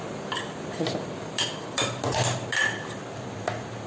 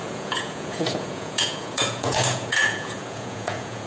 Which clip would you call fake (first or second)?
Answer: second